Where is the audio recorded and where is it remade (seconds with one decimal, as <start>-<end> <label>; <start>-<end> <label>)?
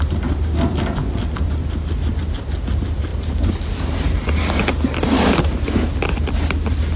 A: 0.0-7.0 recorded